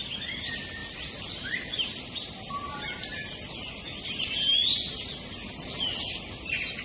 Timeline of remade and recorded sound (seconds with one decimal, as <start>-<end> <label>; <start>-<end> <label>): 0.0-0.8 recorded; 0.8-3.8 remade; 3.8-5.4 recorded; 5.4-6.1 remade; 6.1-6.8 recorded